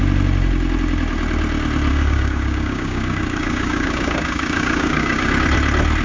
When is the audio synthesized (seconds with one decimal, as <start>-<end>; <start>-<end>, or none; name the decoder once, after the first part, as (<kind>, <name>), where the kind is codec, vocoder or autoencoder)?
1.9-5.3 (codec, DAC)